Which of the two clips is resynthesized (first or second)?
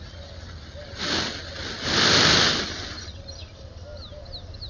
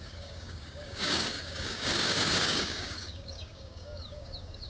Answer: second